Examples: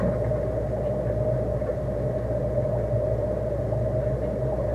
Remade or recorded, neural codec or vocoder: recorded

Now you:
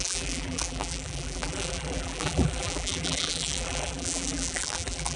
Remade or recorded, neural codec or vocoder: remade, vocoder, BigVGAN v2